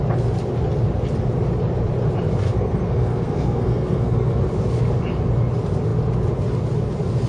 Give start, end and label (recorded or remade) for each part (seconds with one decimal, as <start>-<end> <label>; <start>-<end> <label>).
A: 0.0-2.4 recorded; 2.4-4.4 remade; 4.4-7.3 recorded